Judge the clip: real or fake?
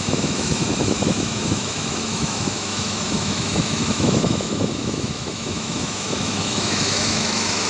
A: fake